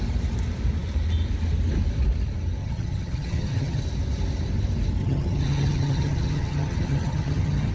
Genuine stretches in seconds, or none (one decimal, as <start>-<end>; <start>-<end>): 0.0-2.6; 3.8-5.0